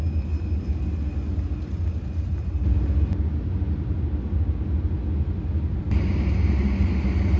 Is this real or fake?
real